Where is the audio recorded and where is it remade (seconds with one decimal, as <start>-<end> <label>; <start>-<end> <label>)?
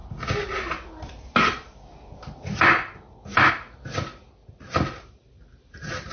0.0-4.4 recorded; 4.4-6.1 remade